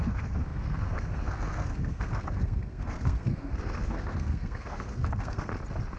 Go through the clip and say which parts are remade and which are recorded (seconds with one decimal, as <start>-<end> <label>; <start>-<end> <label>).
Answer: 0.0-5.5 remade; 5.5-6.0 recorded